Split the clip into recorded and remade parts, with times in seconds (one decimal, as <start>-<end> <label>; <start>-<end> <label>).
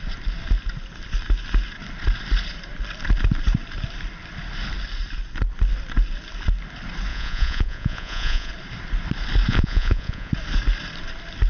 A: 0.0-7.1 recorded; 7.1-8.5 remade; 8.5-9.5 recorded; 9.5-10.3 remade; 10.3-11.5 recorded